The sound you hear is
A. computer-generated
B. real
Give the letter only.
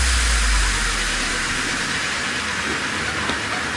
B